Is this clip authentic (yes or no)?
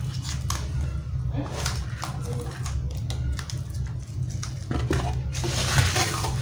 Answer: yes